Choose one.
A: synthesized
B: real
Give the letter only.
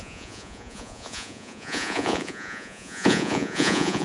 A